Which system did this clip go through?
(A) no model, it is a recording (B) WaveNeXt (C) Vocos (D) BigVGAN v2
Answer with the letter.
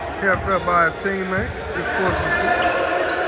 A